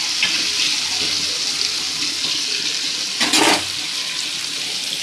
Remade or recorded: recorded